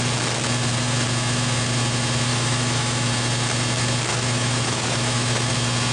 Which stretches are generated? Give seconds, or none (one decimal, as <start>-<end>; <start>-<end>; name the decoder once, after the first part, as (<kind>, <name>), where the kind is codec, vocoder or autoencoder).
2.3-3.1 (autoencoder, DAC-VAE); 4.1-5.5